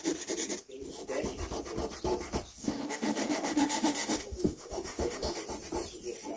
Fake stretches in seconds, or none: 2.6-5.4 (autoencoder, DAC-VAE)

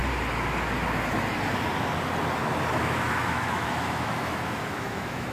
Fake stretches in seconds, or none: 2.7-5.3 (autoencoder, DAC-VAE)

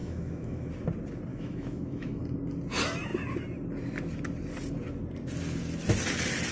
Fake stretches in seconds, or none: 0.0-0.7 (autoencoder, DAC-VAE); 1.3-2.2

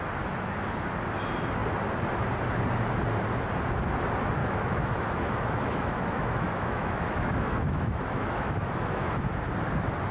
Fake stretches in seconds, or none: 4.4-9.2 (autoencoder, DAC-VAE)

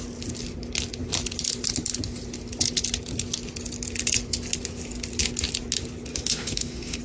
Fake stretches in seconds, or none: 6.1-7.0 (autoencoder, DAC-VAE)

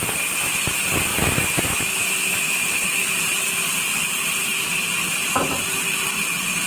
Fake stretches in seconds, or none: 1.1-3.1 (autoencoder, DAC-VAE)

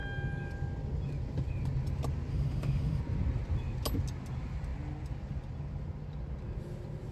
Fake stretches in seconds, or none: 2.3-3.0 (autoencoder, DAC-VAE)

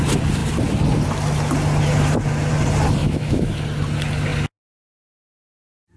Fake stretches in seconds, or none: 3.0-3.5 (autoencoder, DAC-VAE)